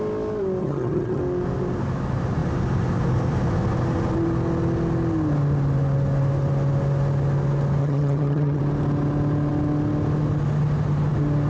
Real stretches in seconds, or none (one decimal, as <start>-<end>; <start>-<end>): 0.0-0.6; 1.2-7.8; 8.6-11.5